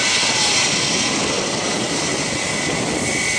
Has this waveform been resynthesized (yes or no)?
no